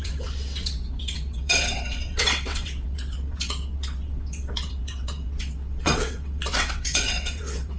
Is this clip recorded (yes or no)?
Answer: no